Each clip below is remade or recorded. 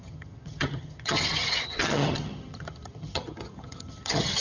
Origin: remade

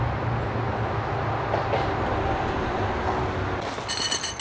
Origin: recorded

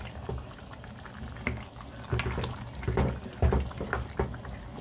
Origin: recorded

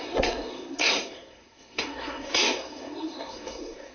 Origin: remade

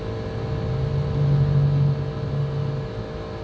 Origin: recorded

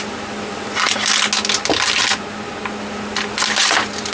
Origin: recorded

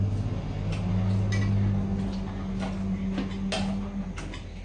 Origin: recorded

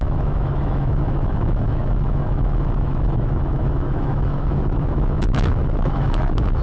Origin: remade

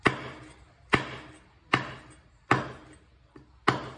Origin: recorded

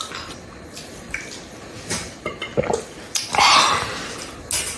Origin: recorded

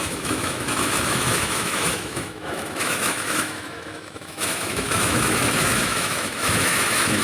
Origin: remade